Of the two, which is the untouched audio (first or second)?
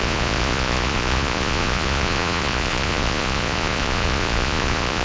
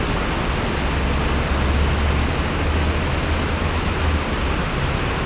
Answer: second